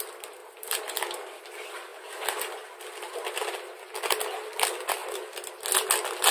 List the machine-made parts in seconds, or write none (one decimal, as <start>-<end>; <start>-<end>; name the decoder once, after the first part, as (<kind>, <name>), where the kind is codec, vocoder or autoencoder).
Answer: 0.4-1.4 (vocoder, BigVGAN v2)